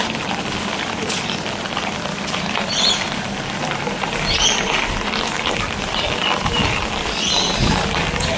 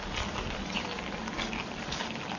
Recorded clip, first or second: second